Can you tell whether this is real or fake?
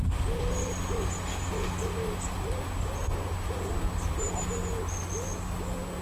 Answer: real